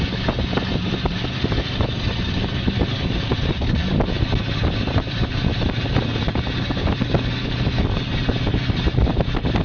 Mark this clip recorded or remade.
remade